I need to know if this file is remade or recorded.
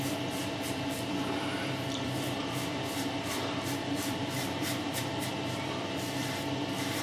remade